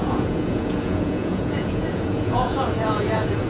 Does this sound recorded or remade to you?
remade